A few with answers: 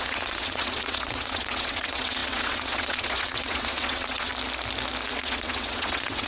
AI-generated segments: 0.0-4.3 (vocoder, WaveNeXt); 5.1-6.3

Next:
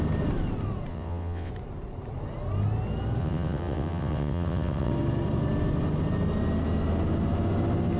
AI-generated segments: 0.9-1.5 (vocoder, WaveNeXt); 3.2-4.9

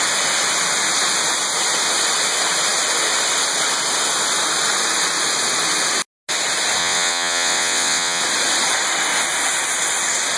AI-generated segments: 6.8-8.2 (vocoder, WaveNeXt)

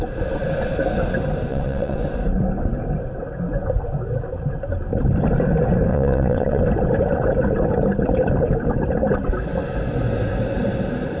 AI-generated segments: 1.5-2.0 (vocoder, WaveNeXt); 5.9-6.6